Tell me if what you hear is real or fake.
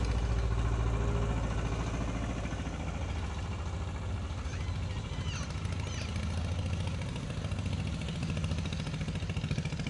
real